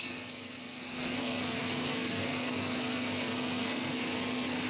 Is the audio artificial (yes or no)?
yes